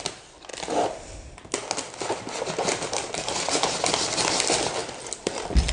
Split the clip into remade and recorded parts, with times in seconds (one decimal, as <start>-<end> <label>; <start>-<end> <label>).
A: 0.0-5.7 recorded